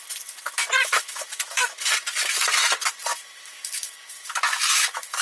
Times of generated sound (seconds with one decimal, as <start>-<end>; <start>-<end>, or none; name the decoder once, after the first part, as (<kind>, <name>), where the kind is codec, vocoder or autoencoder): 0.8-1.8 (autoencoder, DAC-VAE); 3.1-5.2